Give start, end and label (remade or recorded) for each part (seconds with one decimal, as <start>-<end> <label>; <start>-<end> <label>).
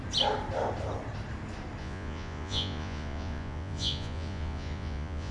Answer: 0.0-1.8 recorded; 1.8-5.3 remade